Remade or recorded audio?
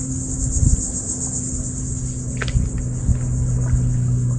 recorded